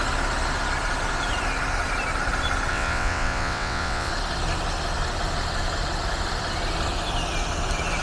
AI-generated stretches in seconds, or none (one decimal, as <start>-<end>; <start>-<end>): 2.7-4.1

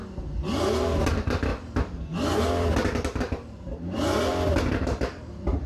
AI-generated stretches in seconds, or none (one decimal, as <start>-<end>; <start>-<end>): 1.1-1.5; 4.7-5.7

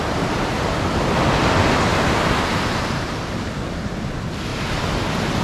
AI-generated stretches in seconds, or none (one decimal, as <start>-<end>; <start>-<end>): 1.9-3.3

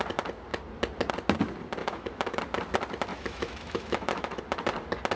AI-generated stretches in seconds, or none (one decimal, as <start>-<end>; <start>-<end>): 1.8-2.4; 3.1-4.4

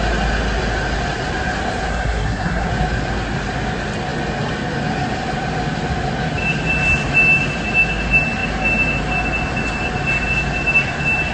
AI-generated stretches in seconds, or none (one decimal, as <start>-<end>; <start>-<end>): 1.9-2.7

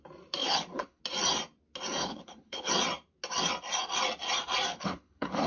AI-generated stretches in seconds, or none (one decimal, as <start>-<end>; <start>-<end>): 0.4-1.0; 2.0-2.7; 4.7-5.5

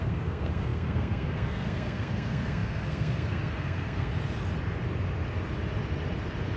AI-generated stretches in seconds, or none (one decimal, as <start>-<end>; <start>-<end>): 0.0-4.1

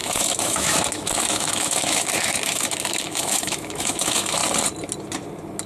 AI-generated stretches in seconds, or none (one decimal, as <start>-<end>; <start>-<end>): 0.0-4.4